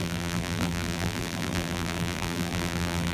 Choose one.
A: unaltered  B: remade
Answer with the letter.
B